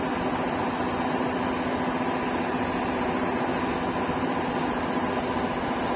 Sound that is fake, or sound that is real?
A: real